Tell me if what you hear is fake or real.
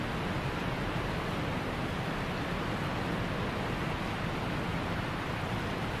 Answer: real